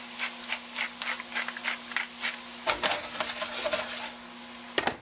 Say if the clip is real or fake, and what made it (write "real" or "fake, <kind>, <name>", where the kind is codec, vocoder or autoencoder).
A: real